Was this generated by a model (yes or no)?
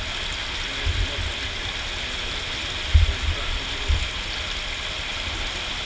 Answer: no